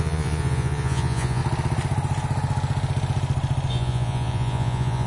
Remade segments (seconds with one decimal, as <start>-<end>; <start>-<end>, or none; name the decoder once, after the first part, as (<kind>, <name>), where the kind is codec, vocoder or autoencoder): 0.0-1.4 (vocoder, Vocos); 3.7-5.1